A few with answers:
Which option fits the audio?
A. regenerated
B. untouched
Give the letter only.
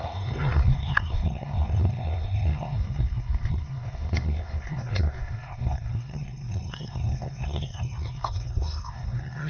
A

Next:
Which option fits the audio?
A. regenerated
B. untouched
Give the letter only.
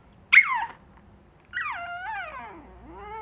B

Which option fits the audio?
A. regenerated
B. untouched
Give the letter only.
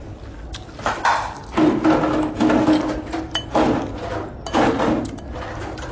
B